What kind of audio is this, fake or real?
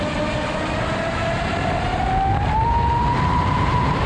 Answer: real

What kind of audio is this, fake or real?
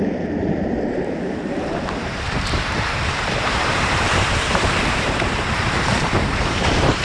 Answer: fake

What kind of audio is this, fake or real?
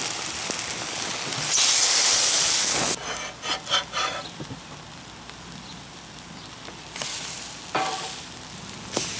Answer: real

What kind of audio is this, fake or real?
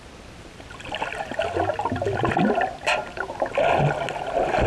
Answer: real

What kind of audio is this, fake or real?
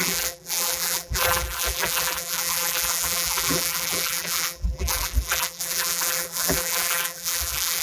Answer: fake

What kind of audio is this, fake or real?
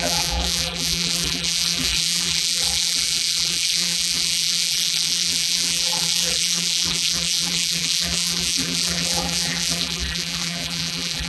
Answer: fake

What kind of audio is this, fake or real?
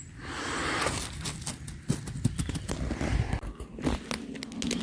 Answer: real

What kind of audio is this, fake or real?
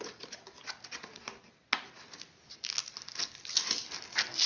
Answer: real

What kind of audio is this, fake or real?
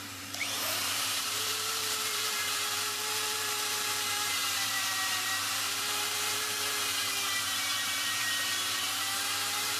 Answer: fake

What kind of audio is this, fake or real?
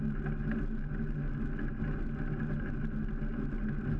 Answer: real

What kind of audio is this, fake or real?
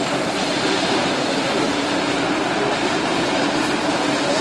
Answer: fake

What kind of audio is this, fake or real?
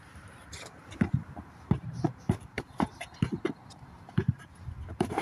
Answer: fake